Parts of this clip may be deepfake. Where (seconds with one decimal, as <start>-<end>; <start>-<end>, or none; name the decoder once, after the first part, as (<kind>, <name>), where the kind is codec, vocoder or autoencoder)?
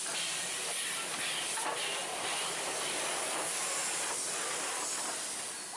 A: none